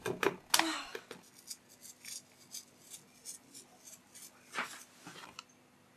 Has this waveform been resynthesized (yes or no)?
no